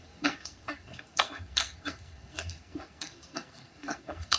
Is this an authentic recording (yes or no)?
no